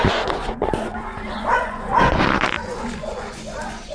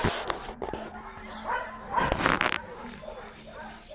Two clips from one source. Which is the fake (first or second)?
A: first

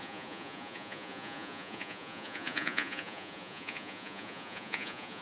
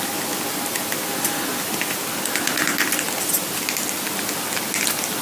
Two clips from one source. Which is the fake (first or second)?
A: first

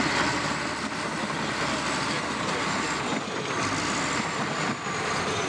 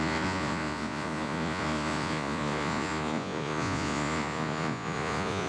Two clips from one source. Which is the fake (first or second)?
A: second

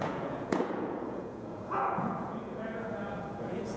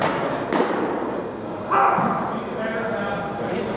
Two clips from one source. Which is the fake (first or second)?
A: first